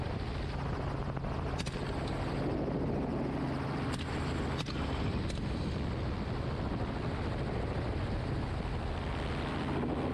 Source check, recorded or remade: recorded